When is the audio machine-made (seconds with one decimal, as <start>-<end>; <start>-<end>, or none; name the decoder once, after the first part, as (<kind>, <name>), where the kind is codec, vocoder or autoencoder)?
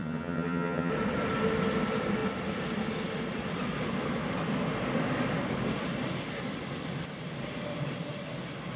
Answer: 0.0-0.9 (vocoder, HiFi-GAN)